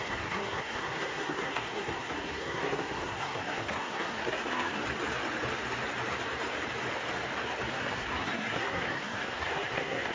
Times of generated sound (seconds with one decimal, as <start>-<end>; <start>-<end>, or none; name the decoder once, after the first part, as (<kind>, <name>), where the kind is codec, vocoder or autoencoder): 0.0-4.8 (codec, SNAC); 7.7-10.1